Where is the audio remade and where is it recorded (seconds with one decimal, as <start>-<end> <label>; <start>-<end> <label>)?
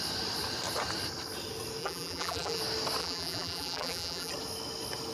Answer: 0.0-1.8 recorded; 1.8-2.6 remade; 2.6-3.0 recorded; 3.0-4.3 remade; 4.3-5.1 recorded